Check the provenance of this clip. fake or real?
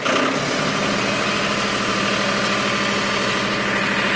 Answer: real